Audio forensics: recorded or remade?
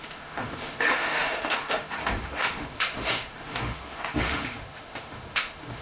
remade